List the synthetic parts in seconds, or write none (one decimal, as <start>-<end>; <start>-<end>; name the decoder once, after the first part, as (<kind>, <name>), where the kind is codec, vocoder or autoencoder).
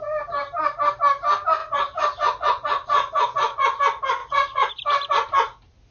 1.6-3.8 (vocoder, Vocos); 4.2-4.7